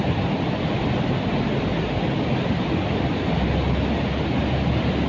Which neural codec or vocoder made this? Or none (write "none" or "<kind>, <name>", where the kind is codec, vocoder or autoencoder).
none